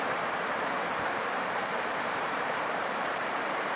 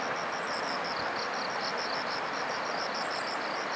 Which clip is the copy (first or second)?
first